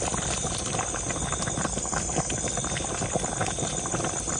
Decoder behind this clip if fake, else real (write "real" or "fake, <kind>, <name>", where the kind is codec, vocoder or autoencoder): real